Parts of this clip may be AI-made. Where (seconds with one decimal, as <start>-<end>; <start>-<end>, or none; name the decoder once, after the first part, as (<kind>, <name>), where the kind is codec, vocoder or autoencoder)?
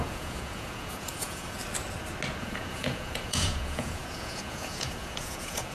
0.0-1.6 (vocoder, Vocos); 2.4-5.7